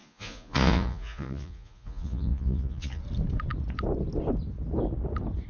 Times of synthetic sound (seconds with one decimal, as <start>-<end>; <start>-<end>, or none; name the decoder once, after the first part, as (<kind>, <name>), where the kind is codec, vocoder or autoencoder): 0.0-3.0 (vocoder, Vocos)